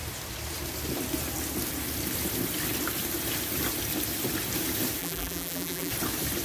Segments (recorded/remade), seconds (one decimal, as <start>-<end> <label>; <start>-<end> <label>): 0.0-5.0 recorded; 5.0-5.9 remade; 5.9-6.4 recorded